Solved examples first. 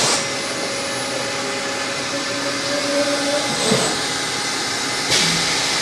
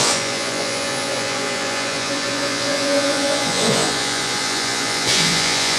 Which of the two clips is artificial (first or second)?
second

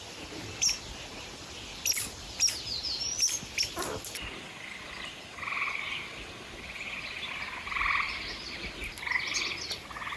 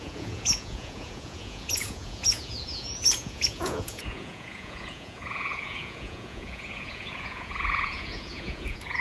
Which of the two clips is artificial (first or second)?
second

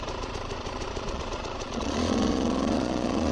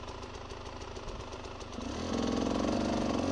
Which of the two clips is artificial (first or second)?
first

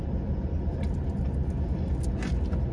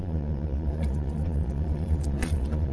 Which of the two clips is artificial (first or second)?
second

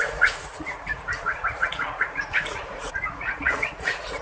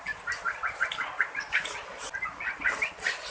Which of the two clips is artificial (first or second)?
first